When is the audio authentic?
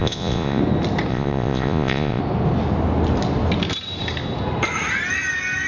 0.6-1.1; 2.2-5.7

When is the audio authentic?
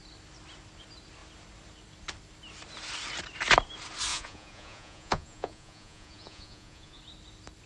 0.0-4.1; 7.0-7.7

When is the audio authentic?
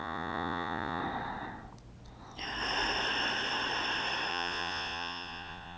1.0-4.3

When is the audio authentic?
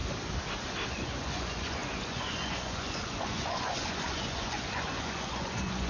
0.0-0.9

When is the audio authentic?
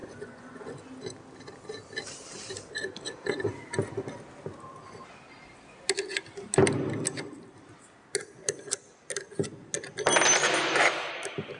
0.7-11.6